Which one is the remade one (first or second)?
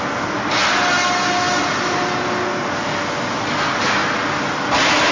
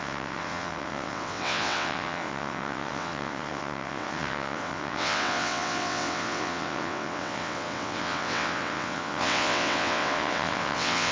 second